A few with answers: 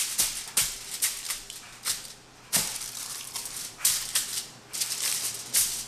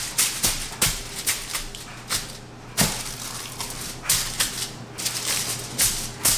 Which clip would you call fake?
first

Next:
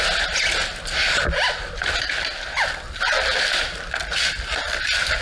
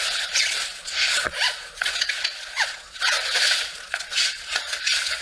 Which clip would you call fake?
second